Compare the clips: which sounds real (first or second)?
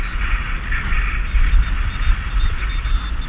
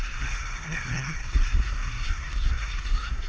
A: first